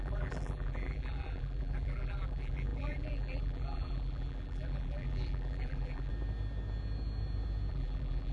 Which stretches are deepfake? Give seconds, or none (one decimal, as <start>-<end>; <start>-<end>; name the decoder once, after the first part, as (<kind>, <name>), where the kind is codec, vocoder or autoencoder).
0.0-6.1 (vocoder, BigVGAN v2); 7.7-8.3